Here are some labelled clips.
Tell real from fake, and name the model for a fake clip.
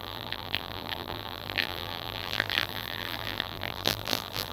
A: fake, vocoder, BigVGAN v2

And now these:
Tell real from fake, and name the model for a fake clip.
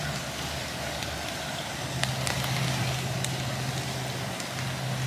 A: real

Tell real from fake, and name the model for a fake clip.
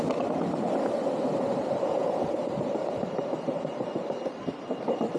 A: real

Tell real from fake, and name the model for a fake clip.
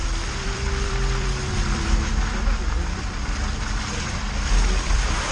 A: fake, vocoder, BigVGAN v2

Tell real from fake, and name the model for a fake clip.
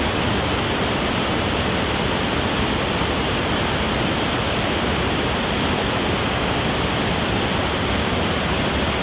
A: real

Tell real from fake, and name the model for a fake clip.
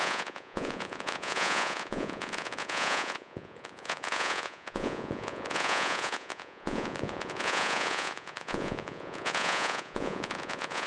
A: fake, vocoder, Vocos